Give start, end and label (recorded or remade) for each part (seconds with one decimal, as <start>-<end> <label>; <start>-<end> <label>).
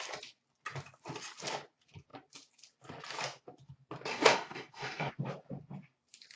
0.0-4.1 recorded; 4.1-5.1 remade; 5.1-6.3 recorded